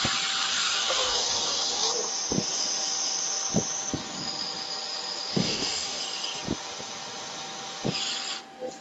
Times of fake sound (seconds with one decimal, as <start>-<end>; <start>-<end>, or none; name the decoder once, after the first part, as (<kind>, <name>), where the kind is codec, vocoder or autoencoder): 0.5-1.9 (codec, DAC); 5.3-6.0